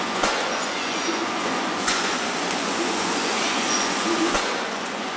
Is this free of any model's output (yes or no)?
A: no